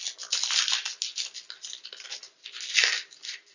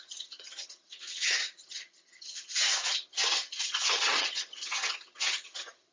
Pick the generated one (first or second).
second